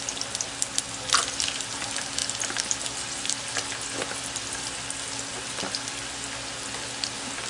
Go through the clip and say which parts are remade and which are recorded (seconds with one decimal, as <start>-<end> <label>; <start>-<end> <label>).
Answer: 0.0-7.5 recorded